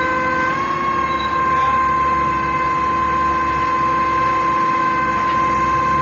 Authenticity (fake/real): real